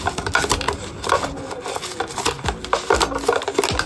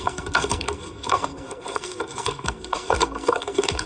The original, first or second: first